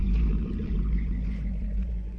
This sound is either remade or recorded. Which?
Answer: remade